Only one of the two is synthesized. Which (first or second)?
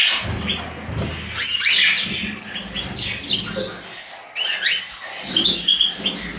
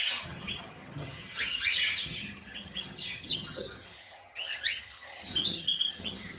second